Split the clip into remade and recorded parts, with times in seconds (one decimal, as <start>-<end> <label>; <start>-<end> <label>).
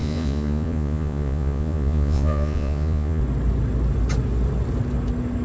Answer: 0.0-3.2 remade; 3.2-5.4 recorded